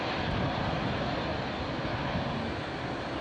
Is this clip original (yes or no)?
yes